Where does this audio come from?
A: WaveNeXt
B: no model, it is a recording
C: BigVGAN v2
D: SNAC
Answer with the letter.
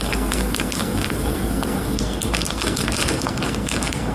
D